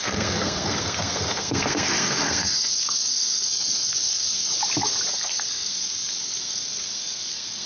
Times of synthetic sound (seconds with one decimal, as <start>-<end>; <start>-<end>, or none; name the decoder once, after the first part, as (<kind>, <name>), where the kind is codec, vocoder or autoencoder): 0.0-4.5 (codec, SNAC); 5.1-7.7